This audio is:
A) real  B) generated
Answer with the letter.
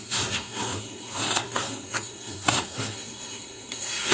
B